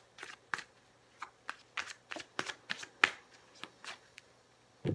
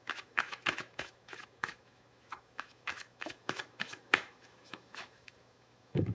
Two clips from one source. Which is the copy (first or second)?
second